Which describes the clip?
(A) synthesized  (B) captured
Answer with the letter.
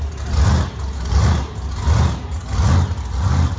B